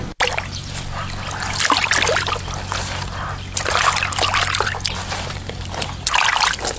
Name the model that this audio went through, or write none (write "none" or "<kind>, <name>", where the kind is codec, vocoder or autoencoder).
none